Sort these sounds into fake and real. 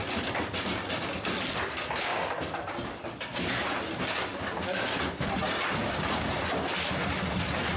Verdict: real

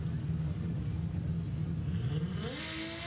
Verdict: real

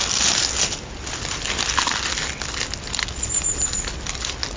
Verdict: real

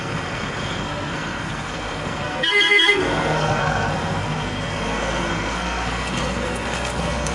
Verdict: fake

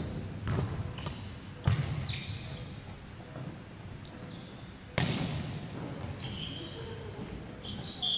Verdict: real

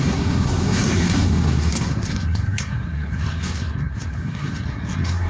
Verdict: fake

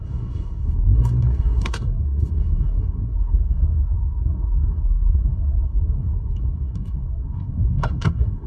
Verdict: fake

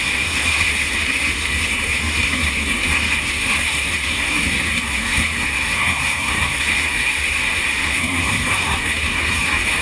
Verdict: fake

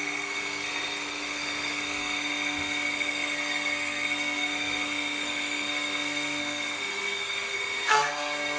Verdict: fake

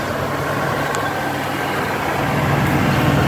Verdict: real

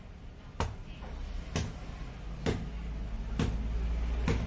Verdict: real